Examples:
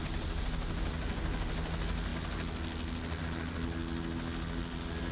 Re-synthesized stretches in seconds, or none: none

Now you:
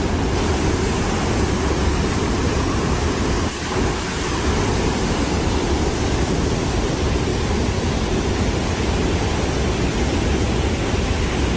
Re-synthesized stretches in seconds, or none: 4.1-6.1 (vocoder, BigVGAN v2); 7.3-9.1

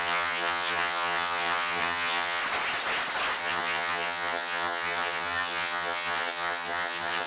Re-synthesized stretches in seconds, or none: 0.0-2.4 (vocoder, HiFi-GAN); 3.4-7.3

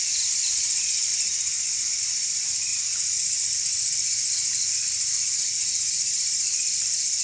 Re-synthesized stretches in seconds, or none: 0.0-1.1 (vocoder, BigVGAN v2); 2.0-2.7; 4.5-5.4; 5.9-7.2

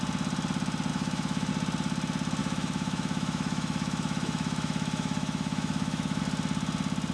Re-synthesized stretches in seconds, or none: 0.9-1.5 (autoencoder, DAC-VAE); 2.4-6.2

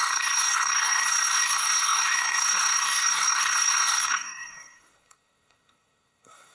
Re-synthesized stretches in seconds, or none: 0.0-6.5 (codec, SNAC)

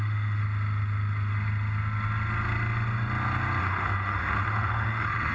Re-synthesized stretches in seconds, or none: 0.0-0.4 (autoencoder, DAC-VAE); 3.6-5.3

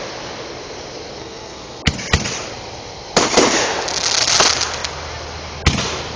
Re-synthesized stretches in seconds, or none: 1.2-1.8 (codec, SNAC)